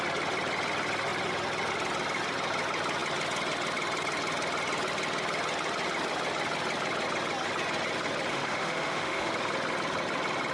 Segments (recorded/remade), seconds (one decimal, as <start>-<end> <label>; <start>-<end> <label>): 0.0-8.3 recorded; 8.3-9.3 remade; 9.3-10.5 recorded